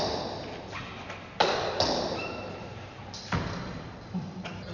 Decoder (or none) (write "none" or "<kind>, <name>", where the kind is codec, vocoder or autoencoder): none